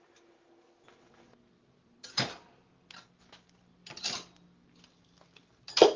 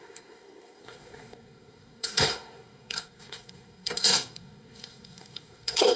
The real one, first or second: first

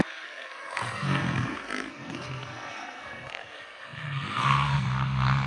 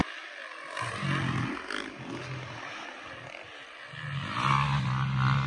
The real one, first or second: second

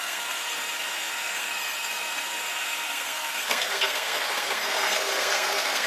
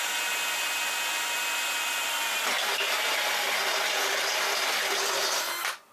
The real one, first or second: second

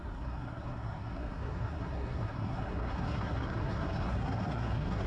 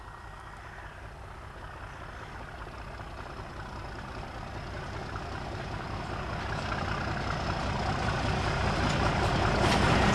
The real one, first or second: second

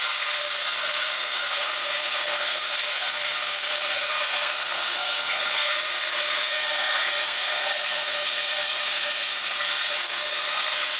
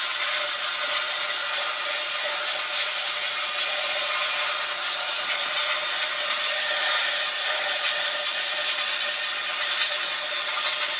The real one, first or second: second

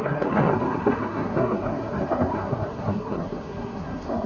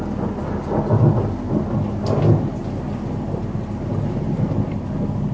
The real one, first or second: second